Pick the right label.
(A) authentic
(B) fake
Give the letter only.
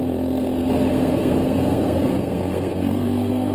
B